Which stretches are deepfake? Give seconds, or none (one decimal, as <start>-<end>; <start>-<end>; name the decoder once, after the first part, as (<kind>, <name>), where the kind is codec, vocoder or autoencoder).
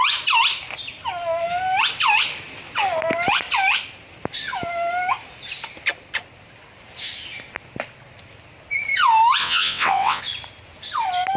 9.4-10.2 (vocoder, WaveNeXt)